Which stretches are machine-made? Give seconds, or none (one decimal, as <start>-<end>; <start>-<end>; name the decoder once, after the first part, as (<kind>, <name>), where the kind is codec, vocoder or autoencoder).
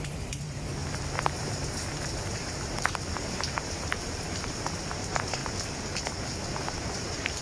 0.0-0.8 (vocoder, BigVGAN v2); 1.3-5.4; 6.5-7.4